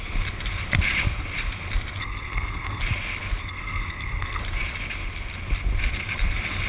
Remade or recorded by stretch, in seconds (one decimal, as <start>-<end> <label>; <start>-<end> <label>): 0.0-2.0 recorded; 2.0-2.8 remade; 2.8-3.4 recorded; 3.4-4.4 remade; 4.4-6.7 recorded